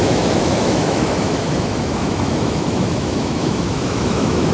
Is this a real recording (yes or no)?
no